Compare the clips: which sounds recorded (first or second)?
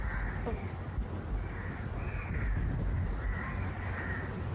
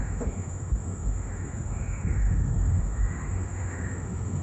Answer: first